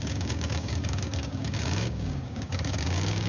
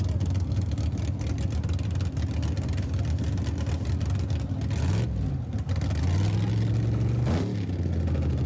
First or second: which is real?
second